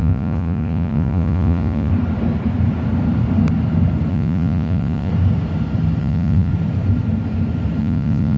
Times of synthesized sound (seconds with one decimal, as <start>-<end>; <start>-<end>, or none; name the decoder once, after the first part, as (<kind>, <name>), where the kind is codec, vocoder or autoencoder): 0.0-1.9 (vocoder, Vocos); 4.1-5.1; 6.0-6.5; 7.8-8.4